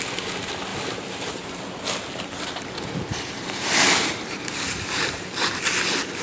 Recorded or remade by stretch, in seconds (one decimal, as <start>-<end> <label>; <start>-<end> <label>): 0.0-0.7 recorded; 0.7-1.6 remade; 1.6-3.1 recorded; 3.1-5.5 remade; 5.5-6.2 recorded